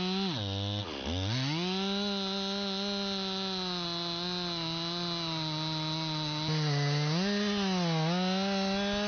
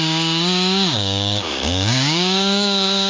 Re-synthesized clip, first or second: second